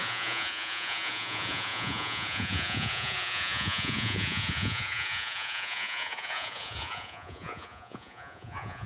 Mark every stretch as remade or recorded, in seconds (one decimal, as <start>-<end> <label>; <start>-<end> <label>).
0.0-8.9 remade